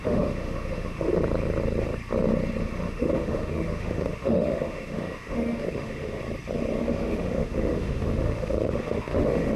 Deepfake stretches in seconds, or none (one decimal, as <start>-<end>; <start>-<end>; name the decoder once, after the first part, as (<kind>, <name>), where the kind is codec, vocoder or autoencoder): 0.0-1.1 (autoencoder, DAC-VAE); 2.6-6.2; 6.8-9.6

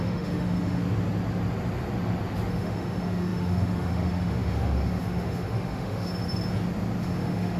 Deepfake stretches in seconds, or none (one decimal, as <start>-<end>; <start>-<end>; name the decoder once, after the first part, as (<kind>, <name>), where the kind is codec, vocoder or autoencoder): 0.0-0.8 (autoencoder, DAC-VAE); 2.5-6.1; 7.0-7.6

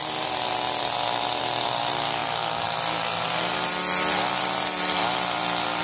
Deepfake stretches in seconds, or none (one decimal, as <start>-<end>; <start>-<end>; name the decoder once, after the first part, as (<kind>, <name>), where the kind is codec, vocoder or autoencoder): none

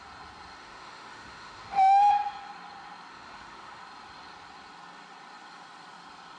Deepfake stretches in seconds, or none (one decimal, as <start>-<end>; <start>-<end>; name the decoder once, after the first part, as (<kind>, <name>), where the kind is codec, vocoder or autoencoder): 0.6-2.0 (autoencoder, DAC-VAE); 3.1-3.8

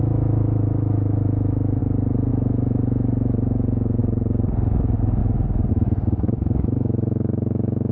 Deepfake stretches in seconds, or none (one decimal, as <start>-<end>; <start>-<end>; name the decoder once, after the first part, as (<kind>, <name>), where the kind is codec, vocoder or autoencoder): 0.0-1.8 (autoencoder, DAC-VAE); 2.3-4.0; 4.7-5.2; 5.7-7.9